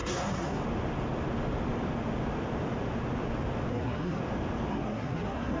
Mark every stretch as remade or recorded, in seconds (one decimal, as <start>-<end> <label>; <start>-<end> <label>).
0.0-0.6 remade; 0.6-3.7 recorded; 3.7-4.2 remade; 4.2-4.7 recorded; 4.7-5.6 remade